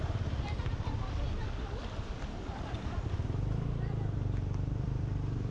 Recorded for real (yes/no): no